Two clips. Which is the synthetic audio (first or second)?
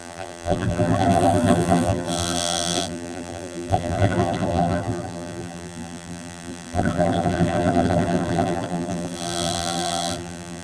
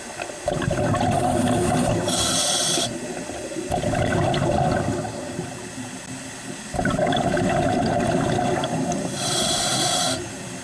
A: first